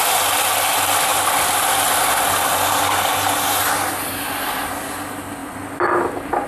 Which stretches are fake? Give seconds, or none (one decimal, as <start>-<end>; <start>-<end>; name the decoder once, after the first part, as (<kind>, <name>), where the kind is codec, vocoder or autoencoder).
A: none